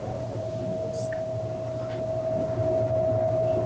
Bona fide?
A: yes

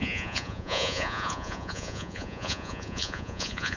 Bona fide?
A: no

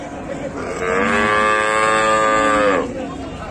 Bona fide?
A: yes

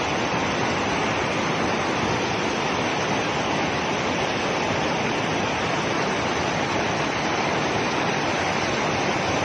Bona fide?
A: no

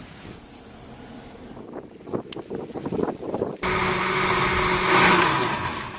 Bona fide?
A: yes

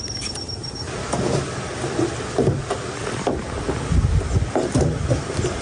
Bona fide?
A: yes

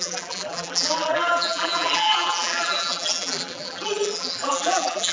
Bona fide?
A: no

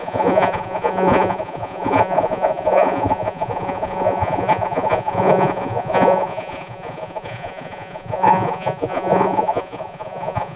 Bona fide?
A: no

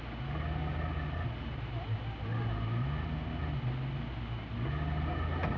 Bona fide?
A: yes